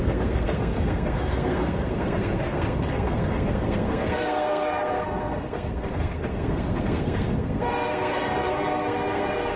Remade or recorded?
remade